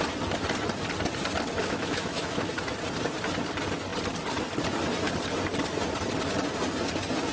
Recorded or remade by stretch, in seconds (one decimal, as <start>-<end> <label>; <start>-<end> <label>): 0.0-1.6 recorded; 1.6-2.5 remade; 2.5-7.3 recorded